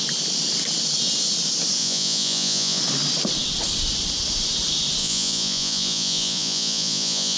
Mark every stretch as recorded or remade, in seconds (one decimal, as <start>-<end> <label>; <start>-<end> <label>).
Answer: 0.0-1.8 recorded; 1.8-2.8 remade; 2.8-5.0 recorded; 5.0-7.4 remade